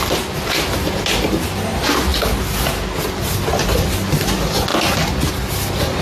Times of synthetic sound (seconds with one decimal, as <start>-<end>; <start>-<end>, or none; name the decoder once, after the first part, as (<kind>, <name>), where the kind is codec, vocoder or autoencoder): none